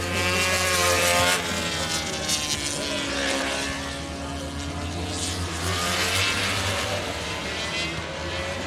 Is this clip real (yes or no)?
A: yes